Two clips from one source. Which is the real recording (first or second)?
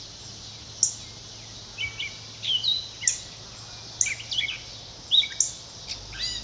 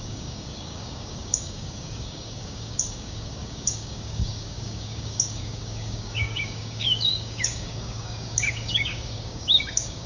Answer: first